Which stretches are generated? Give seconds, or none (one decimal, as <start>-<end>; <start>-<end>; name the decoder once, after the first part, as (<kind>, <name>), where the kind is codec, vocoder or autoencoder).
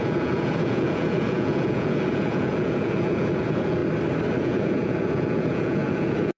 0.0-3.8 (vocoder, Vocos); 4.4-6.4